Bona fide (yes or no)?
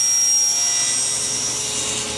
yes